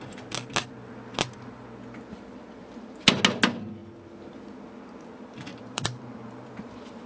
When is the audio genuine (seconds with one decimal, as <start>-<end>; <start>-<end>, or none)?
0.0-2.6; 3.2-5.5